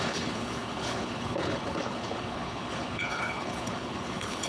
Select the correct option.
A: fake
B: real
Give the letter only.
A